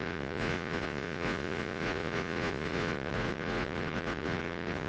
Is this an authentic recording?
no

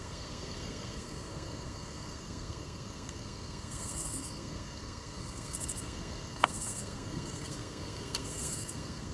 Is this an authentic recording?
no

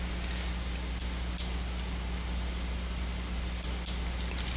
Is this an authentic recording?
yes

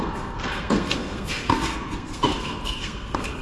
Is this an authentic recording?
no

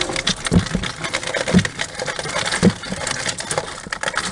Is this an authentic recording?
yes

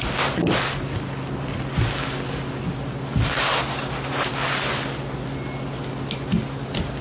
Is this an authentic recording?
yes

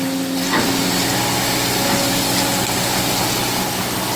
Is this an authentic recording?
yes